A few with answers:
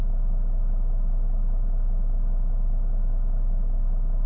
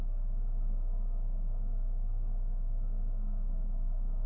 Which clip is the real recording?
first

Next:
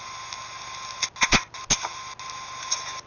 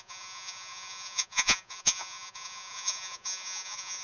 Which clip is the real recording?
first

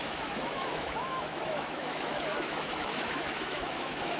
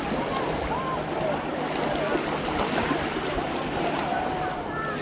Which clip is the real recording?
second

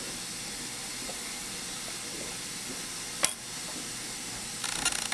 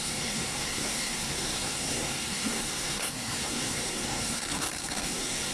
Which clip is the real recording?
first